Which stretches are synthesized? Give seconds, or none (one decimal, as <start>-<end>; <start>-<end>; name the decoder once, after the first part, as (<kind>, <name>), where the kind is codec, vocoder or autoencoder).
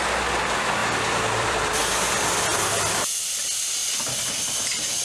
0.8-1.8 (vocoder, BigVGAN v2); 3.8-4.3